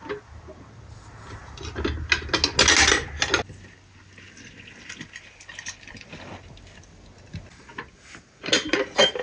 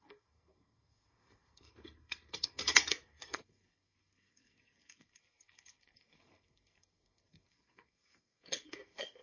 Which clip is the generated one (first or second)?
second